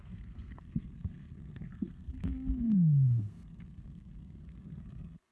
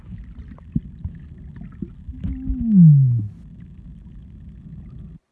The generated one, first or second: first